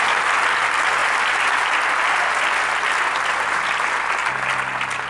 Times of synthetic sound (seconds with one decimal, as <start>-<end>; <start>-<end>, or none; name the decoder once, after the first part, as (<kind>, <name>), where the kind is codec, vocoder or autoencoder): none